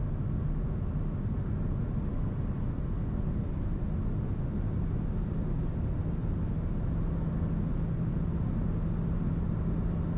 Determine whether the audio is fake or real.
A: real